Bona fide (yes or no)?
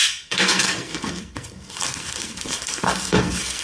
no